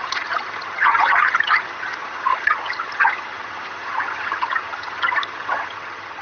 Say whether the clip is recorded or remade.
remade